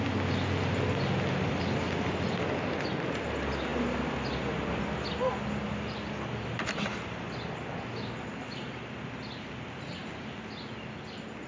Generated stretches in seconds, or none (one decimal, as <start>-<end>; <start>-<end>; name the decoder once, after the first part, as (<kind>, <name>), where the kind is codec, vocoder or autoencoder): none